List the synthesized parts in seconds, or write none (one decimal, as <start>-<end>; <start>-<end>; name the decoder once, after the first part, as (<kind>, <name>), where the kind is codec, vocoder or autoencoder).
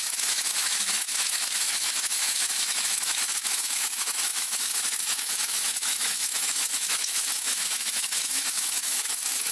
0.0-9.5 (autoencoder, DAC-VAE)